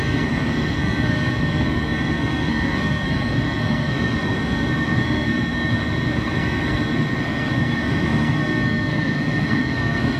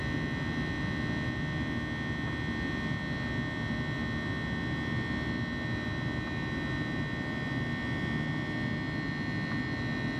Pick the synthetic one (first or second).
first